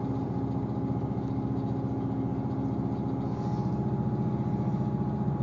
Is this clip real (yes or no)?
yes